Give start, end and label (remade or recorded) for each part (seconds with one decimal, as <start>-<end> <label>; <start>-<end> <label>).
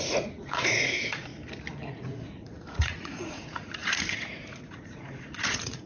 0.0-1.3 remade; 1.3-1.9 recorded; 1.9-5.9 remade